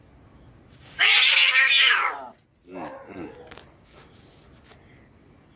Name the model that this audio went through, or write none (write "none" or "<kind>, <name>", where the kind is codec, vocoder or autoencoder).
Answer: none